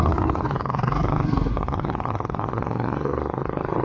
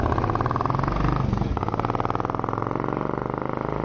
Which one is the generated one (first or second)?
first